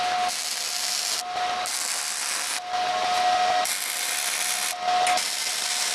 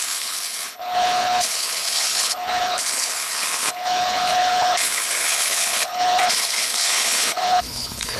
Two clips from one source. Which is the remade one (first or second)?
second